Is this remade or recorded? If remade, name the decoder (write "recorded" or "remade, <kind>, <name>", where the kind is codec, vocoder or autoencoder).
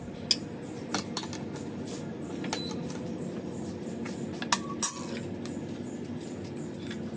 recorded